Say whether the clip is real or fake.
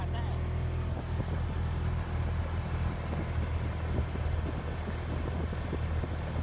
real